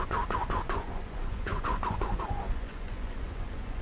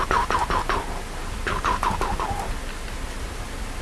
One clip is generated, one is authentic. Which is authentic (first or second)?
second